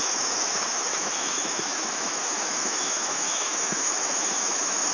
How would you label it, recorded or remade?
remade